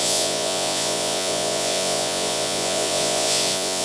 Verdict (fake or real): fake